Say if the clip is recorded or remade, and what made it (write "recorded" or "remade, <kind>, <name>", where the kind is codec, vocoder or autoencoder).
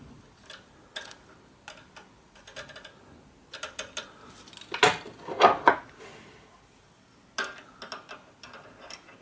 recorded